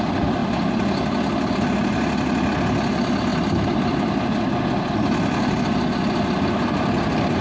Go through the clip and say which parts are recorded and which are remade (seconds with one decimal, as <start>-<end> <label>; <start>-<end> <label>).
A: 0.0-7.4 recorded